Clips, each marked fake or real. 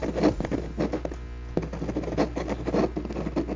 real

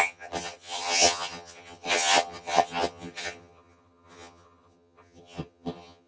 fake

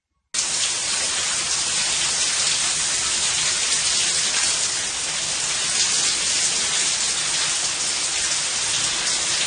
real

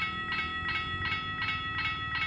real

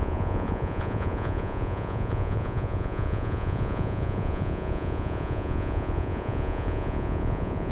fake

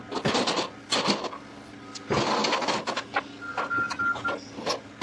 real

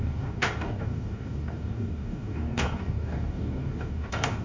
fake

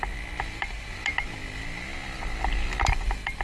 real